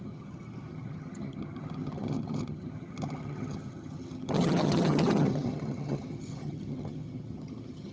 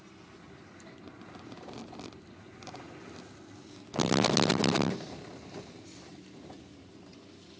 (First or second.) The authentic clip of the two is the second